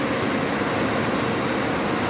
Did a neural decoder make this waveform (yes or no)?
no